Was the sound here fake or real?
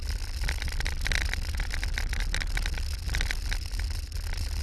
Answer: real